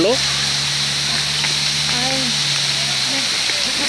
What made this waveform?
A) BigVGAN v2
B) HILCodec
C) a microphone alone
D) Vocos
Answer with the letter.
C